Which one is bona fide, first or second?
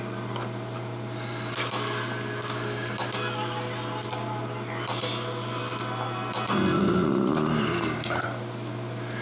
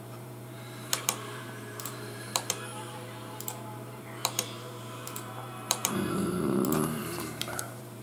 first